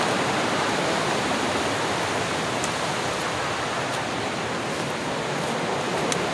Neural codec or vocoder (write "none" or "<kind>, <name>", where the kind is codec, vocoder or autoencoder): none